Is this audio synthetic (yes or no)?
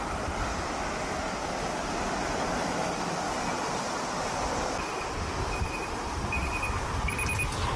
no